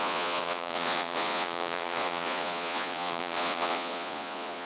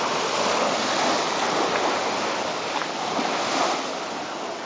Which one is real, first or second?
second